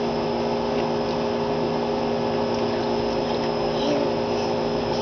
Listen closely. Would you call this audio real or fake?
real